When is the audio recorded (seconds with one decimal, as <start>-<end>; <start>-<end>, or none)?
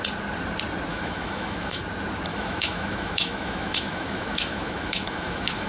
0.0-0.9; 1.8-2.3